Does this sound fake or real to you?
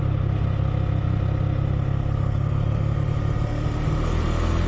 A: real